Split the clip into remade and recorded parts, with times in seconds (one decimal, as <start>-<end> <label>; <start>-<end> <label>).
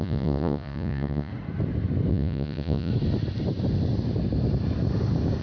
0.0-1.3 remade; 1.3-2.1 recorded; 2.1-2.9 remade; 2.9-5.4 recorded